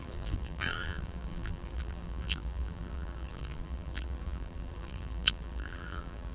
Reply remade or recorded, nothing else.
remade